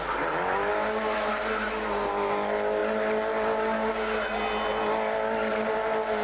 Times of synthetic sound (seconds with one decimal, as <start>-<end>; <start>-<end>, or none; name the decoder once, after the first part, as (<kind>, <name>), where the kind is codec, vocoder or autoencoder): none